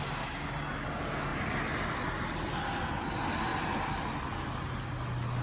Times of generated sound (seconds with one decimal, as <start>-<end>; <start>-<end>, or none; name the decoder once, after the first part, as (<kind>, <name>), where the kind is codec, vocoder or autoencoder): none